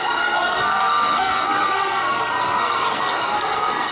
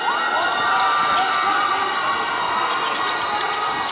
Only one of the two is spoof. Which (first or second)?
first